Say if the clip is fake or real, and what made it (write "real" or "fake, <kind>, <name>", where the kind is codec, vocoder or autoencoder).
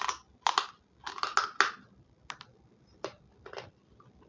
real